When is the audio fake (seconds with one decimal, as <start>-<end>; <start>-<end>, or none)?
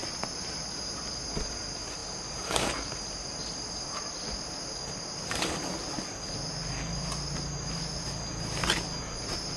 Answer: none